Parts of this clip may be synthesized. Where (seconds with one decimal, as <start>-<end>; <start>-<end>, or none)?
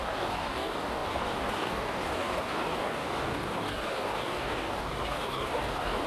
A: 0.0-6.1